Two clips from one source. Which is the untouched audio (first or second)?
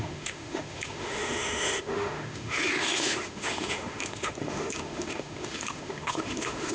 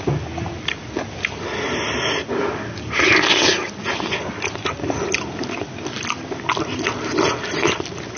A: second